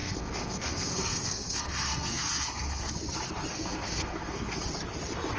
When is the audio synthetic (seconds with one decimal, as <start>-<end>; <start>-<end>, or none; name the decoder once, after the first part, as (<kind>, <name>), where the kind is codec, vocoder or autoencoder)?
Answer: 0.0-2.9 (codec, SNAC); 3.5-4.6